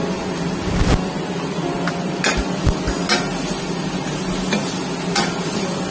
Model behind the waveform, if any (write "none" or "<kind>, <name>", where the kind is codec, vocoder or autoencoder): none